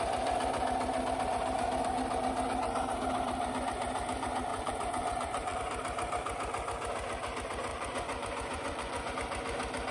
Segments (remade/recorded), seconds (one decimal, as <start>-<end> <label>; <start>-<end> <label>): 0.0-4.5 recorded; 4.5-5.6 remade; 5.6-7.7 recorded; 7.7-9.1 remade; 9.1-9.9 recorded